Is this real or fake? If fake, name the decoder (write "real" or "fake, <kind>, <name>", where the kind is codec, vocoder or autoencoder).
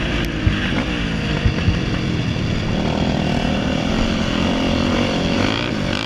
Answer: real